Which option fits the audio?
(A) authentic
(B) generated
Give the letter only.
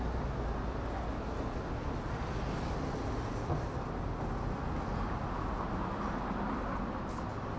A